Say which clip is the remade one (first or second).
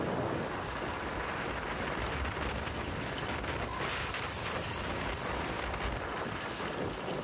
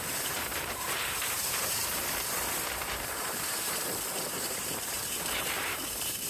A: second